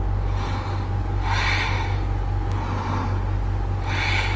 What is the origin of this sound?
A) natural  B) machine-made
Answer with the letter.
A